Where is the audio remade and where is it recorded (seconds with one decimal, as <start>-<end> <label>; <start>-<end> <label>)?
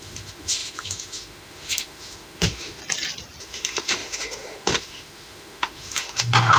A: 0.0-2.8 remade; 2.8-3.4 recorded; 3.4-6.6 remade